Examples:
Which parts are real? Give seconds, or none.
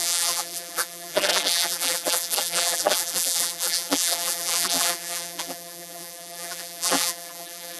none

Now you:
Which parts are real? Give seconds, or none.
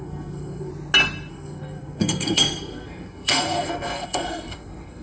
0.7-1.3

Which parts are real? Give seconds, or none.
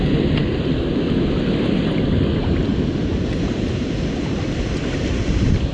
0.0-2.7; 3.7-5.7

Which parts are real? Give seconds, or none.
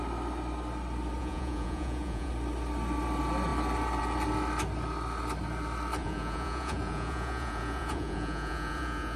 0.0-1.2; 2.3-6.0